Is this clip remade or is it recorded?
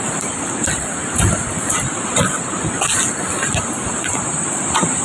recorded